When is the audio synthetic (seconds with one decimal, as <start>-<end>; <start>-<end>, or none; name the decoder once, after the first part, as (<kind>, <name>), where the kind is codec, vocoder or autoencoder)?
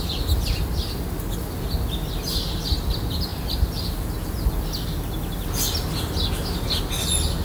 none